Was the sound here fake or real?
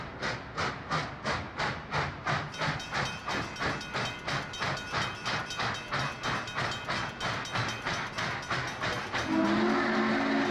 real